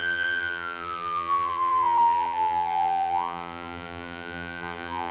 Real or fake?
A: fake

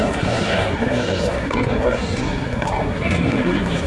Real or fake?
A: fake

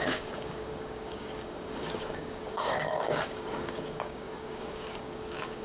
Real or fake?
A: fake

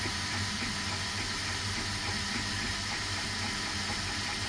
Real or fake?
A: real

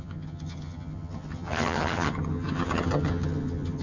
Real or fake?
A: fake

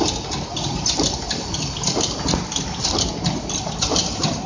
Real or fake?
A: real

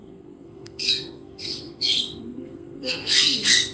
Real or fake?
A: fake